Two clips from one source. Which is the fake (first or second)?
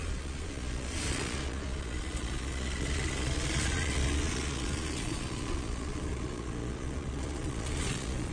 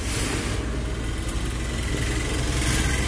first